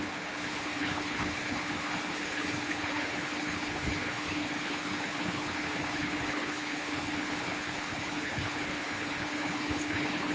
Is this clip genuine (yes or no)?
no